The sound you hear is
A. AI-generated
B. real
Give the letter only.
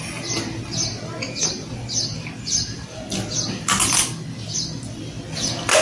B